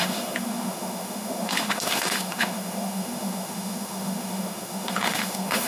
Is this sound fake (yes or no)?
yes